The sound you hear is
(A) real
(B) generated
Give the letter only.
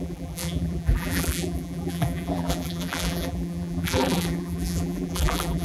B